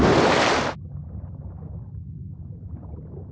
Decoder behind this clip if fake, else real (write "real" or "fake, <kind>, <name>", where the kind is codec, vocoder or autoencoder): real